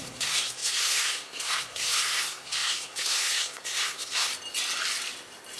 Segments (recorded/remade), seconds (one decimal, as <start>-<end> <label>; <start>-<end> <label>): 0.0-4.3 remade; 4.3-5.6 recorded